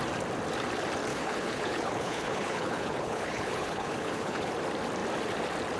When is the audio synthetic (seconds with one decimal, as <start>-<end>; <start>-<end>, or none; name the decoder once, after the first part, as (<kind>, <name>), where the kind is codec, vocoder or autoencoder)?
1.1-4.5 (codec, HILCodec)